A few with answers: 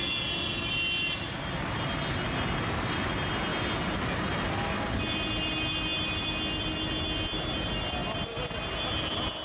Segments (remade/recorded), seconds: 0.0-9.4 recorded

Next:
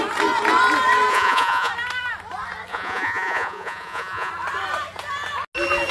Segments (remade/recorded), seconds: 0.0-1.1 recorded; 1.1-1.7 remade; 1.7-2.7 recorded; 2.7-4.3 remade; 4.3-5.9 recorded

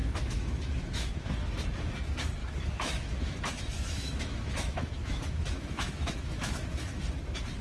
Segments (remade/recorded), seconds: 0.0-1.2 remade; 1.2-2.4 recorded; 2.4-7.0 remade; 7.0-7.6 recorded

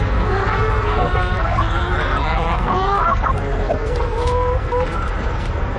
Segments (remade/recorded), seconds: 0.0-5.8 remade

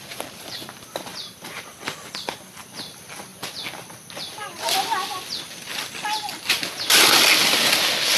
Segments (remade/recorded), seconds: 0.0-1.1 recorded; 1.1-1.7 remade; 1.7-8.2 recorded